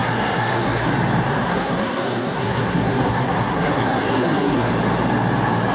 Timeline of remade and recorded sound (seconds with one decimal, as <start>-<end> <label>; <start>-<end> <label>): 0.0-0.9 remade; 0.9-1.3 recorded; 1.3-4.7 remade; 4.7-5.7 recorded